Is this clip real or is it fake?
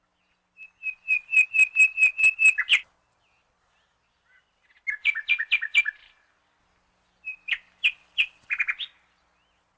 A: real